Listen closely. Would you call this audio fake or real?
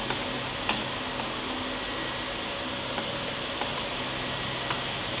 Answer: real